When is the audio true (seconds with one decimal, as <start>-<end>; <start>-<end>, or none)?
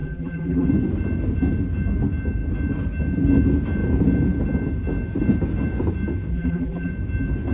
0.7-6.3; 6.9-7.5